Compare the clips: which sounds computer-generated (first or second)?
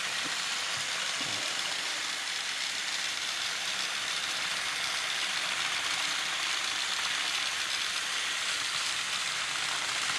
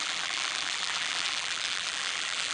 second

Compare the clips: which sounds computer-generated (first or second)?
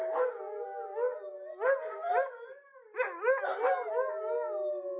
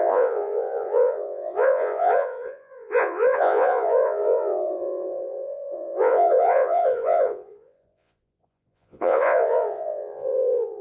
second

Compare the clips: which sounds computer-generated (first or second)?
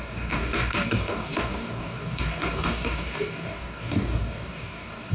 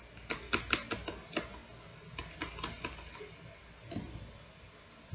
first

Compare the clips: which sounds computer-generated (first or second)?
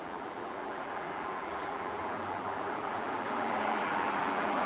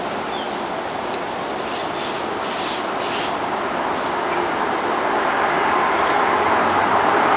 first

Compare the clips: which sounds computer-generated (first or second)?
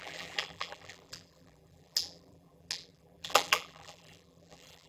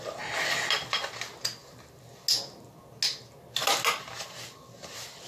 first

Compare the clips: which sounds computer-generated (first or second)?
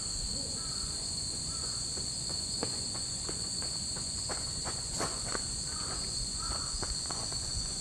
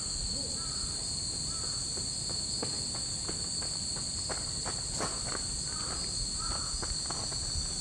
first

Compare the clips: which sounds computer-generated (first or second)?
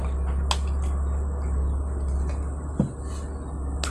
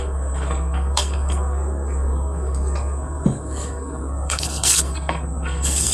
second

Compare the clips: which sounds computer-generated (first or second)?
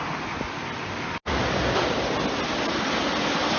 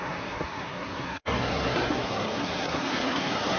second